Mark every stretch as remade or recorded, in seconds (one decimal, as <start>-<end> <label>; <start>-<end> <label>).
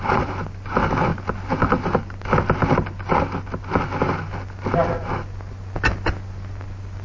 0.0-7.0 recorded